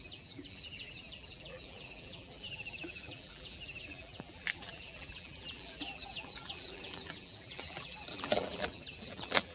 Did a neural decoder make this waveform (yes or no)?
yes